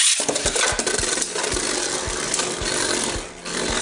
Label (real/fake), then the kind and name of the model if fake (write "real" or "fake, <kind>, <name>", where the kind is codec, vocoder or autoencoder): real